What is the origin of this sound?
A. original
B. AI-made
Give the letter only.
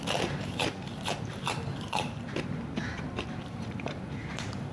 B